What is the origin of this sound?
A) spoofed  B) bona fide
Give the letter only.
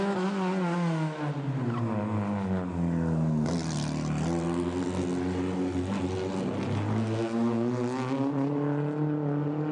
B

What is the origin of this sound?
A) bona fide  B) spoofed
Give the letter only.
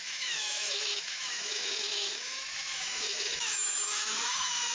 B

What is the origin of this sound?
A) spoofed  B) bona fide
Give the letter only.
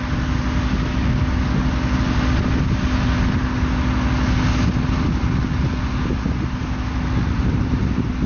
B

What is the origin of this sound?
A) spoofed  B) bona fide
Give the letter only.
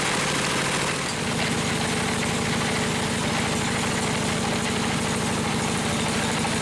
B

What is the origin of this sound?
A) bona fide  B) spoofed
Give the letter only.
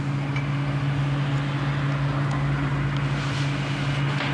A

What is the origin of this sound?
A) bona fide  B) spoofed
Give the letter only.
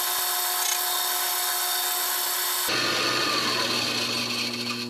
A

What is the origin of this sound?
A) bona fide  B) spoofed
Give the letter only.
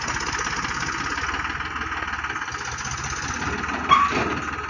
A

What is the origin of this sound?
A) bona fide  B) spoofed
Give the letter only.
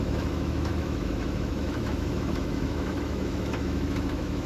B